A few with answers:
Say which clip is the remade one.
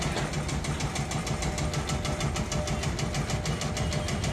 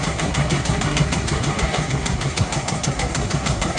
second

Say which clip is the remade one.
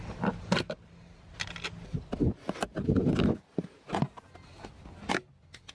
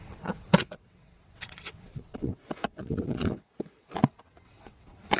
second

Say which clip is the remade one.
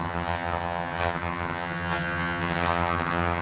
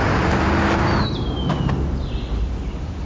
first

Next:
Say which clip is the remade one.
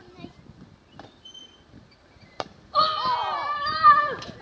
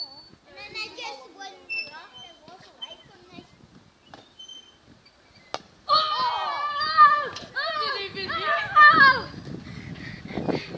first